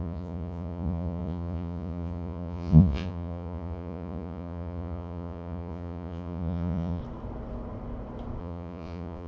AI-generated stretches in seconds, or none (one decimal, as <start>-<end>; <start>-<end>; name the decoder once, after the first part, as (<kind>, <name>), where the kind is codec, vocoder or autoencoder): 0.0-7.0 (vocoder, Vocos); 8.4-9.3